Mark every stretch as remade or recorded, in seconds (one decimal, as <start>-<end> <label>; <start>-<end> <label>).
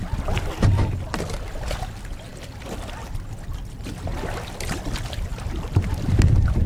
0.0-5.3 recorded; 5.3-6.7 remade